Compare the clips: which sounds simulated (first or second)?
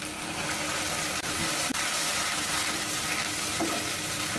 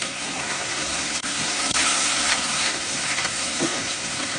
second